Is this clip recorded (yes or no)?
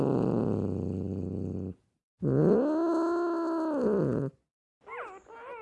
yes